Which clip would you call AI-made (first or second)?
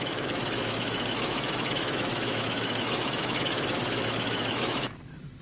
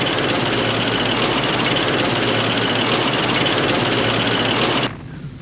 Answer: first